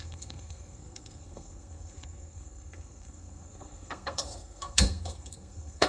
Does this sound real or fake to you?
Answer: fake